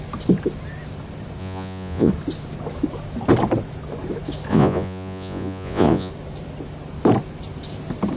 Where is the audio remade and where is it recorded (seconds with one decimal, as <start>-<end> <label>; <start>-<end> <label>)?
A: 0.0-1.4 recorded; 1.4-2.1 remade; 2.1-4.5 recorded; 4.5-6.1 remade; 6.1-8.2 recorded